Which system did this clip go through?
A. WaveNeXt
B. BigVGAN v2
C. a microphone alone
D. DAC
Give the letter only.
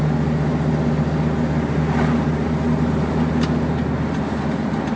C